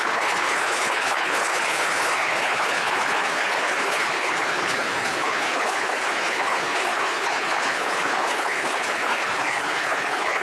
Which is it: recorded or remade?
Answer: remade